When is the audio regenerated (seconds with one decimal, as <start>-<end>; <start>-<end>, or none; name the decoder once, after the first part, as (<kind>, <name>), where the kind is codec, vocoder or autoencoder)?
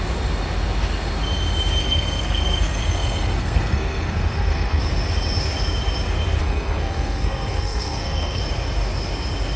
1.8-4.8 (codec, SNAC); 6.4-8.4